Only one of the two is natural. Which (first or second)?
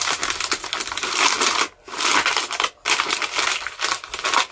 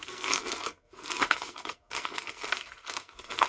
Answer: first